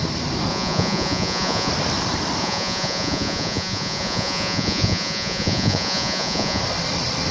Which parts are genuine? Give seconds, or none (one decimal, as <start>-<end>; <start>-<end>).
0.0-0.5; 1.7-2.4; 6.6-7.3